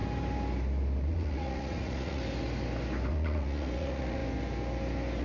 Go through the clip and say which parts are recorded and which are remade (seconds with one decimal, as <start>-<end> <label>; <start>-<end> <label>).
0.0-1.0 recorded; 1.0-2.2 remade; 2.2-3.1 recorded; 3.1-4.2 remade; 4.2-5.2 recorded